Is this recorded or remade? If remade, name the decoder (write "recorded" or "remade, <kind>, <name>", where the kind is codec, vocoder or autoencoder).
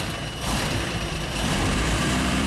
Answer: remade, vocoder, BigVGAN v2